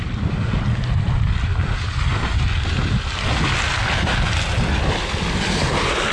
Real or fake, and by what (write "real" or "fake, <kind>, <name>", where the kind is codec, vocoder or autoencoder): real